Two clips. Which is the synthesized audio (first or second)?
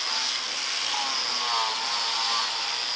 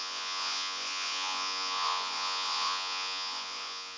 second